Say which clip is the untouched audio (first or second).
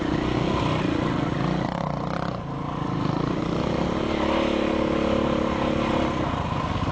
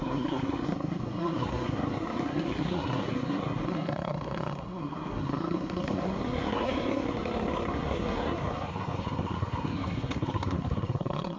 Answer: first